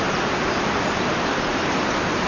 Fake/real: real